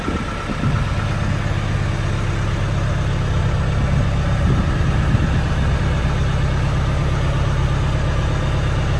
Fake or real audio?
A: real